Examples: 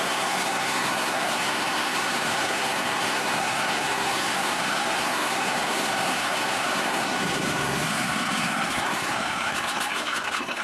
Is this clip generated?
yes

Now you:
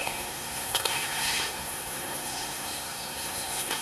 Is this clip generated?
yes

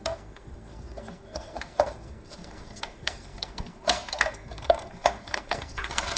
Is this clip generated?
yes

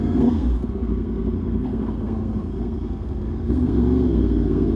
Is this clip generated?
yes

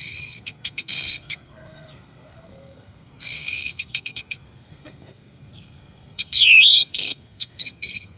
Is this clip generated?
yes